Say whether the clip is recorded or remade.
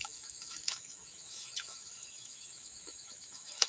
remade